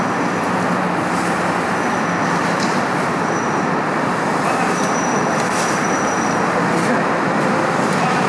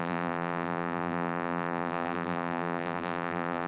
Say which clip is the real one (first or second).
first